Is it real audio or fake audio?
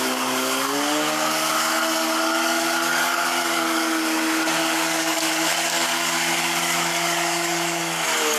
fake